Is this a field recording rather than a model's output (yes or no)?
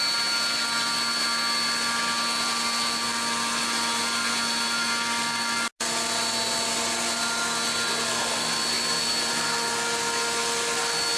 yes